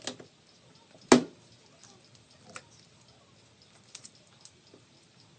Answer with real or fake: real